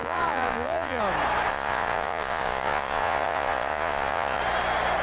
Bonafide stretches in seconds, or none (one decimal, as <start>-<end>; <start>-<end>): 1.0-1.5; 4.4-5.0